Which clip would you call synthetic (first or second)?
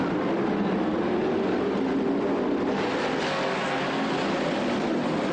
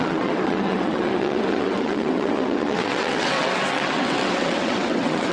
second